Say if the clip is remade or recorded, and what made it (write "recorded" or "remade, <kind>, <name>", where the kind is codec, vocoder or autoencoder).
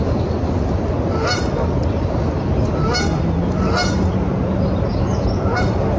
recorded